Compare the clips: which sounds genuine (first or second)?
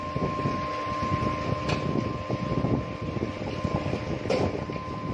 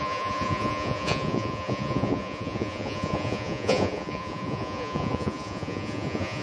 first